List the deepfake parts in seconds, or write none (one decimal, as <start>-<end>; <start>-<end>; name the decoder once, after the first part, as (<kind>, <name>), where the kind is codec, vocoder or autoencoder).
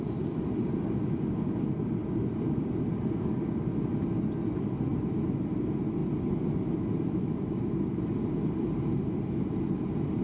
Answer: 2.0-2.8 (vocoder, BigVGAN v2); 4.9-5.5; 6.0-6.8